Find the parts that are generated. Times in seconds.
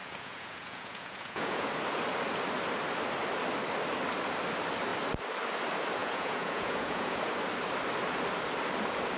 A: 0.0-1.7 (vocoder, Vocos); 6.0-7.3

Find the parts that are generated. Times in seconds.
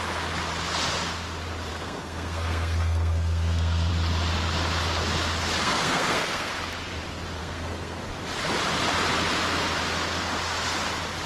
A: 1.7-3.9 (codec, SNAC); 5.6-6.5; 7.4-8.0